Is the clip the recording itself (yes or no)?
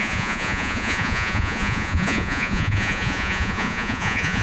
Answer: no